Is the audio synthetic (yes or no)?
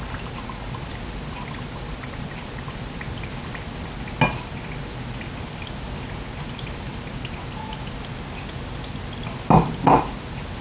no